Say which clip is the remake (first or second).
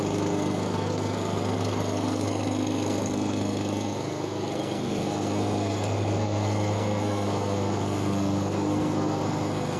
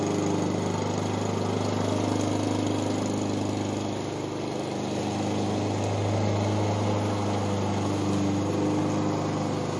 first